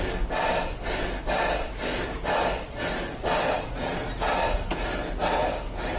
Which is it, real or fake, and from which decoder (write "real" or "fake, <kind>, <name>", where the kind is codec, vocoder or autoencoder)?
real